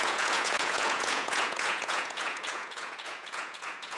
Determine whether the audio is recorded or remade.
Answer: remade